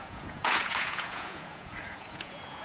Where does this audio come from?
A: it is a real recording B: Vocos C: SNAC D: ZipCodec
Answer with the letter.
B